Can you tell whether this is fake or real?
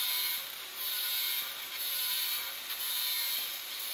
fake